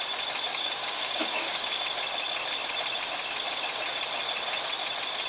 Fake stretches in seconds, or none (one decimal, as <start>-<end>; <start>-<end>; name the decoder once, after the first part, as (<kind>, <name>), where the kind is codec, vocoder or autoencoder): 0.5-1.8 (codec, DAC)